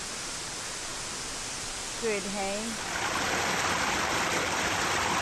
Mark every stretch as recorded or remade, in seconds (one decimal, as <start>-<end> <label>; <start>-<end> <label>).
0.0-5.2 recorded